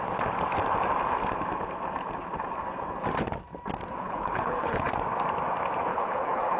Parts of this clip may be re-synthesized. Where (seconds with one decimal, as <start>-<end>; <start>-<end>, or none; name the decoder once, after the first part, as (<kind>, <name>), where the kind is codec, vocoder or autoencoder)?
4.0-4.9 (codec, HILCodec); 5.9-6.6